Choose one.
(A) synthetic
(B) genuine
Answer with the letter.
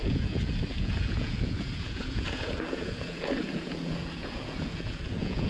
A